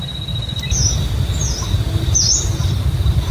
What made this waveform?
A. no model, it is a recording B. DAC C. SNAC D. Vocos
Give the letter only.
A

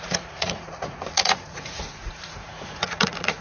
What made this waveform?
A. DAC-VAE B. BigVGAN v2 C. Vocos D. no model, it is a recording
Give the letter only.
C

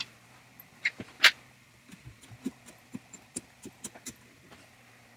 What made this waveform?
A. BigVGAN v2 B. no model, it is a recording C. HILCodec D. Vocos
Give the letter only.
A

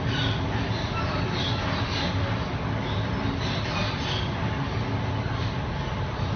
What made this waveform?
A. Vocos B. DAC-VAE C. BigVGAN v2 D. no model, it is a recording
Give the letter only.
D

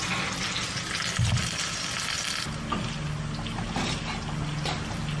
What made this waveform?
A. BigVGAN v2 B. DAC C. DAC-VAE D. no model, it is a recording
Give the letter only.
D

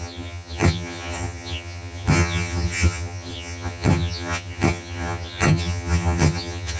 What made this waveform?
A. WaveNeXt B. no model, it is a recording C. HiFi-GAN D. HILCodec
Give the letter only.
C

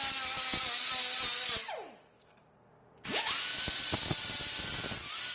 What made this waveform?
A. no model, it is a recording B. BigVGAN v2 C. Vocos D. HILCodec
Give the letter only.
A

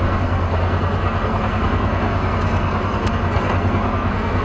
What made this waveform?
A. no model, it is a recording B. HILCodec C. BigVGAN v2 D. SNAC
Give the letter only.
D